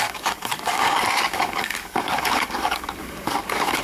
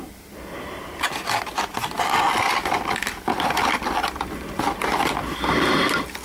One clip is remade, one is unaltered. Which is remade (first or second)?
first